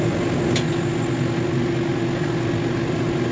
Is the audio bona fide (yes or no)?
yes